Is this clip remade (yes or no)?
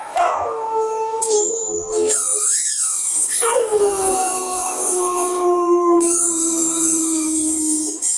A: yes